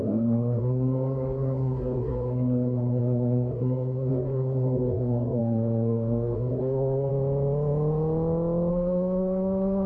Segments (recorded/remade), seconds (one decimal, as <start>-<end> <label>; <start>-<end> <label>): 0.0-7.1 remade; 7.1-8.7 recorded; 8.7-9.9 remade